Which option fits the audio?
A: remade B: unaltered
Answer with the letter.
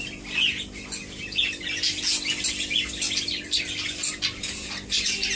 B